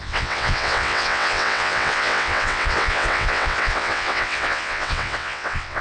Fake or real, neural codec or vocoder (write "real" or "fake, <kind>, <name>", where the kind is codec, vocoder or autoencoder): fake, vocoder, WaveNeXt